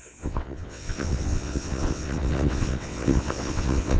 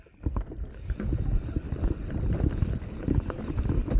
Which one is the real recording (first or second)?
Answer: second